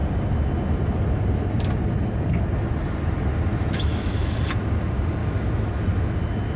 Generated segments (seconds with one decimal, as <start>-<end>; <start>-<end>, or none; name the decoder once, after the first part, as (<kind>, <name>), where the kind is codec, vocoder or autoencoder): 3.5-4.4 (autoencoder, DAC-VAE); 5.2-6.1